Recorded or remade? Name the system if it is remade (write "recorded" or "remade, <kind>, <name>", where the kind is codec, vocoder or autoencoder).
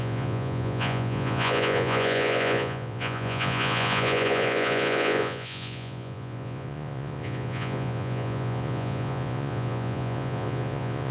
remade, vocoder, Vocos